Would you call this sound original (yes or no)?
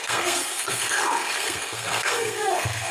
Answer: no